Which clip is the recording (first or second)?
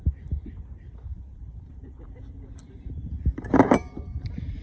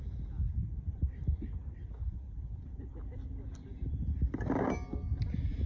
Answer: second